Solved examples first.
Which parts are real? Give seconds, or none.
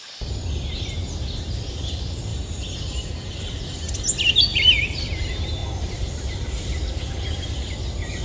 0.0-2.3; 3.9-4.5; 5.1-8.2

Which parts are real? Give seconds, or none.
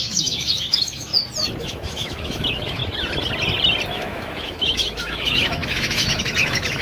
1.1-1.6; 2.8-3.9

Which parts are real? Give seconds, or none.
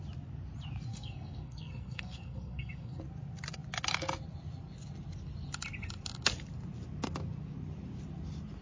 0.0-0.9; 3.0-8.6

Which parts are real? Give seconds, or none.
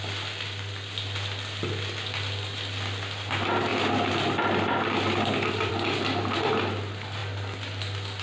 0.0-3.7; 5.7-8.2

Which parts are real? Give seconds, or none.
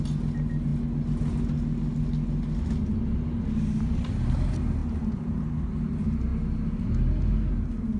0.0-8.0